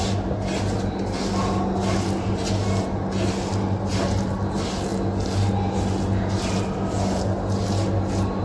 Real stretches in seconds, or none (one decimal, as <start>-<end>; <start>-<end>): 0.0-8.4